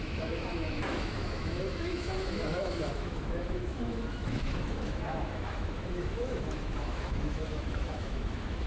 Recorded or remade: remade